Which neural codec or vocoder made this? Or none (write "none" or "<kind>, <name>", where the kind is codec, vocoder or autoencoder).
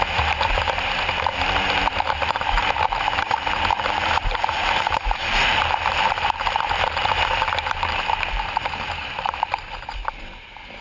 vocoder, BigVGAN v2